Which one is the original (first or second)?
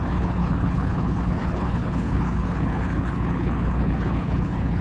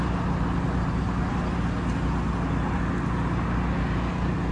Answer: second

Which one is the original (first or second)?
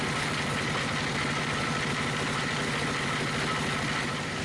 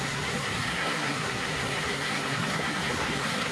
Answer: first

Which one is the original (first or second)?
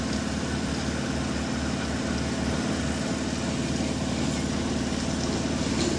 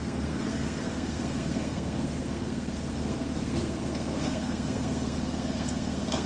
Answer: first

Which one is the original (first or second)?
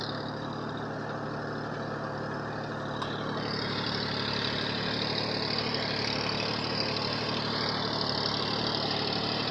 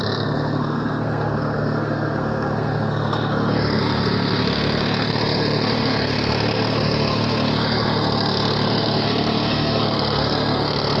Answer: first